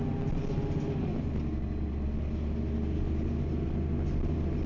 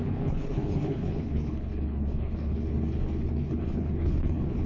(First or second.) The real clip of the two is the first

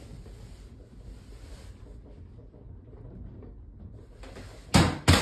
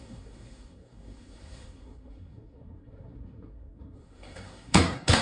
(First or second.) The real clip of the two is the first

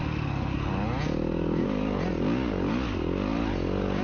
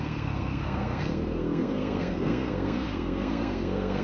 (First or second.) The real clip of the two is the first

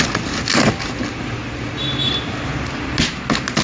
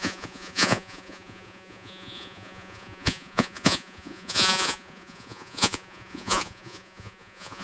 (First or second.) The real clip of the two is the first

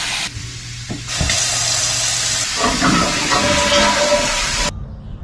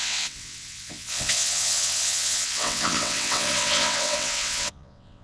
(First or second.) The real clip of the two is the first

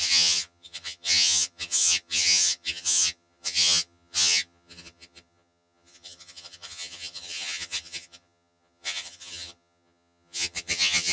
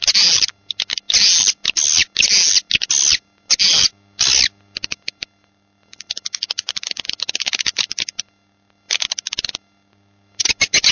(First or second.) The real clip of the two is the second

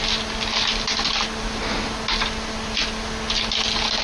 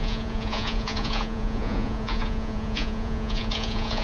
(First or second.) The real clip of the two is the first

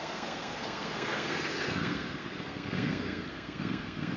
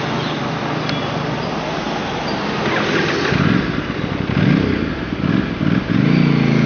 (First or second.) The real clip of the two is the second